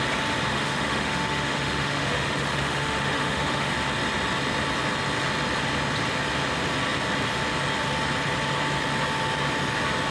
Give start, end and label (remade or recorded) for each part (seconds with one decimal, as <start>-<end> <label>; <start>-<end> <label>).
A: 0.0-0.5 recorded; 0.5-3.7 remade; 3.7-10.1 recorded